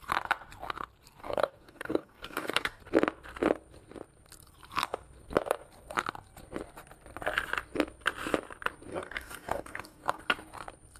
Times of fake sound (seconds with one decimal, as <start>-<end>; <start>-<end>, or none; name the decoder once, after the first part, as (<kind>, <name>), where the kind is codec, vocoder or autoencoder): 1.2-2.8 (codec, DAC); 8.9-10.2